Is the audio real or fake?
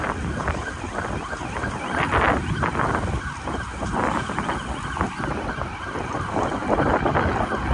real